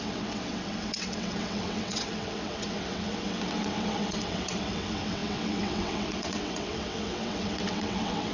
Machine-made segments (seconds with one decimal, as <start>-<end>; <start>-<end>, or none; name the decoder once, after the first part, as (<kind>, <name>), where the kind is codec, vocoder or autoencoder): 0.0-8.3 (vocoder, WaveNeXt)